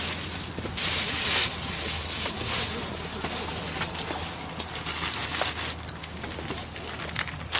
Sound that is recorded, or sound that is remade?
recorded